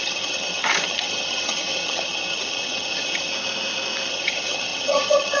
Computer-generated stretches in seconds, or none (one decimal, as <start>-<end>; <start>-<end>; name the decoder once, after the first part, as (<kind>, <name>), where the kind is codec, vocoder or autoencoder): 0.0-3.3 (vocoder, HiFi-GAN); 4.1-5.4